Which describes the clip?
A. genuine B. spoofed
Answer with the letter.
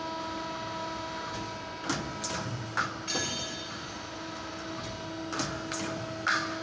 A